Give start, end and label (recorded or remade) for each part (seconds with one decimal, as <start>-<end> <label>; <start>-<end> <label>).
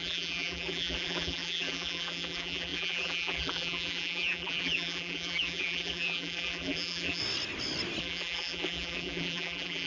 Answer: 0.0-7.2 remade; 7.2-8.0 recorded; 8.0-9.9 remade